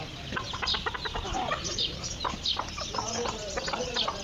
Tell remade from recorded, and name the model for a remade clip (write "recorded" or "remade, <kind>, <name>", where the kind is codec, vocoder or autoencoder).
recorded